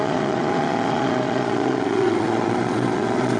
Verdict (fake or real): fake